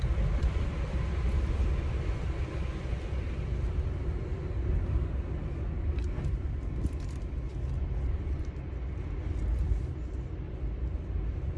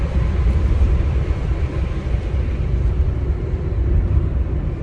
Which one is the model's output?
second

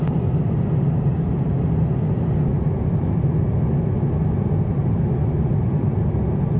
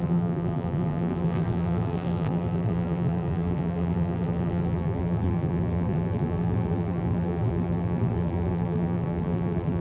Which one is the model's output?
second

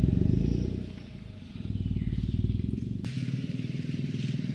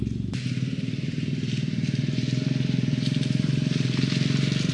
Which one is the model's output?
first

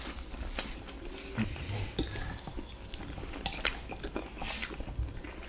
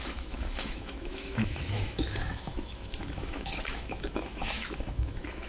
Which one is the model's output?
second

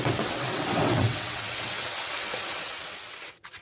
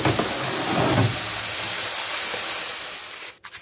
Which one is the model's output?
first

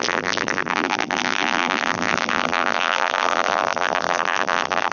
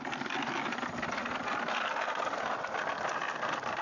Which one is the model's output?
first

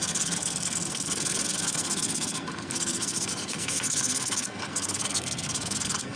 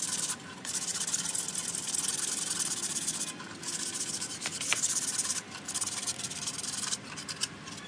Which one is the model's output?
first